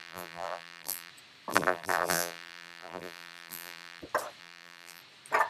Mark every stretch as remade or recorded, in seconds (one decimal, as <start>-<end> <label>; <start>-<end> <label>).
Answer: 0.0-1.1 remade; 1.1-1.5 recorded; 1.5-4.0 remade; 4.0-4.4 recorded; 4.4-5.0 remade; 5.0-5.5 recorded